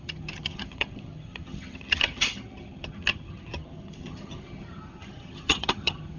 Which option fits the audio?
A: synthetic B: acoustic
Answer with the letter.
A